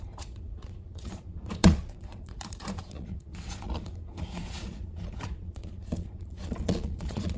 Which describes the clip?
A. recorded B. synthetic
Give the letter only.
B